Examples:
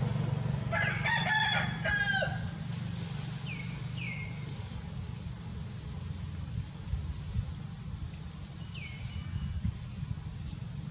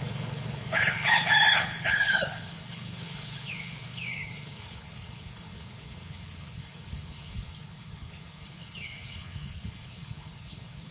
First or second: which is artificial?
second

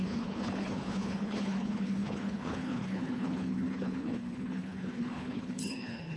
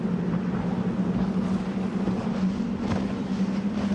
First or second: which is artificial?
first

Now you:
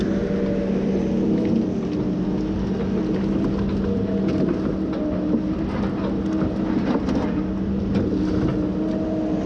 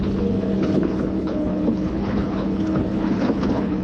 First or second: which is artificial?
second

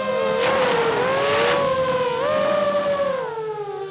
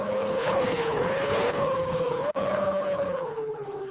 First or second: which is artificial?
second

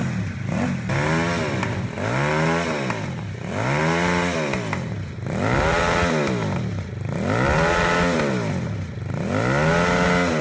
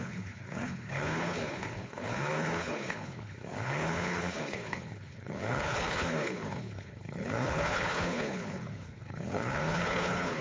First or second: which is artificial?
second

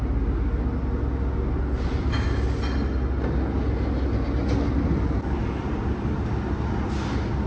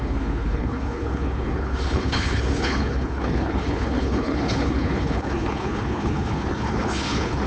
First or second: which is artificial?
second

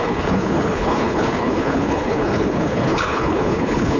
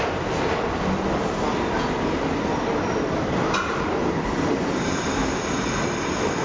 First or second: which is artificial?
first